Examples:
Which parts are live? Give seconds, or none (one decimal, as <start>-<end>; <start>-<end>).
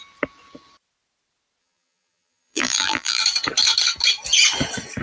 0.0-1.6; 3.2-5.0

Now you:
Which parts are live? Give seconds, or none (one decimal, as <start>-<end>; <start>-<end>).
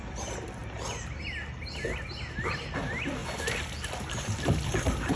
0.0-5.2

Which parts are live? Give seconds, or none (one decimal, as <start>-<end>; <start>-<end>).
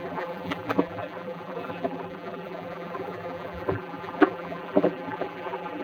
none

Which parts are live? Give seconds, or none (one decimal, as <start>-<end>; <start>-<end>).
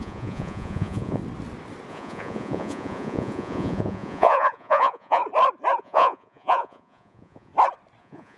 1.2-1.9; 5.2-5.8; 7.5-8.0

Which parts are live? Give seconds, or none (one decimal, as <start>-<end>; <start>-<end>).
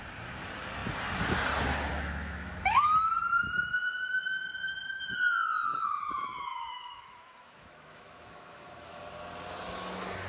0.0-1.9; 3.1-5.7; 9.0-10.3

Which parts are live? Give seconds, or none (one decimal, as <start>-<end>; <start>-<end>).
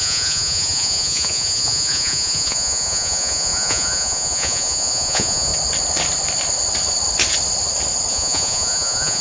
5.5-8.1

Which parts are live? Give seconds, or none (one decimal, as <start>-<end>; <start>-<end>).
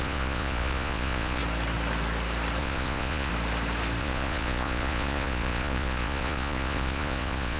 1.4-2.6; 3.3-4.0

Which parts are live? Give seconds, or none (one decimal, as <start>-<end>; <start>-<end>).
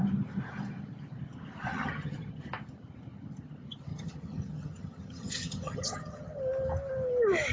0.0-1.7; 2.4-3.9; 6.4-7.5